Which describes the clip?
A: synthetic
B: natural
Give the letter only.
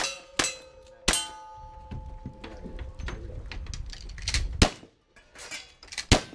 B